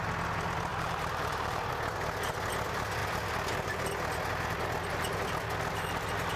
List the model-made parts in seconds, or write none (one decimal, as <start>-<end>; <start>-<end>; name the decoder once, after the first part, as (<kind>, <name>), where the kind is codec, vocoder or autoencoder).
0.7-1.7 (vocoder, BigVGAN v2)